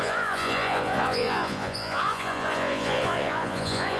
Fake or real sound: fake